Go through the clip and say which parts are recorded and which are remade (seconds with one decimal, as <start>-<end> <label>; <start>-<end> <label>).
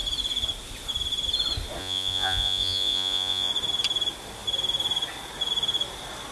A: 0.0-1.8 recorded; 1.8-3.5 remade; 3.5-6.3 recorded